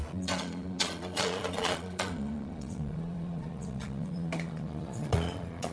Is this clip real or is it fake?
fake